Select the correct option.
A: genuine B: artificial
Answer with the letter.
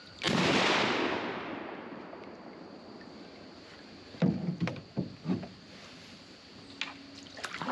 A